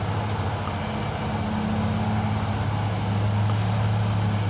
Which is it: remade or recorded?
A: recorded